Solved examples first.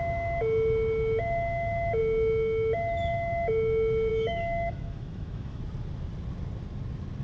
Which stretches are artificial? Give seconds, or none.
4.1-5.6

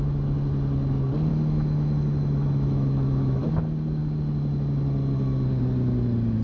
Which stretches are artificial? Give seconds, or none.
1.3-3.5